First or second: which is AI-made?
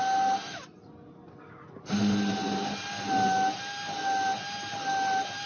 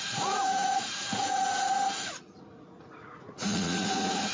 second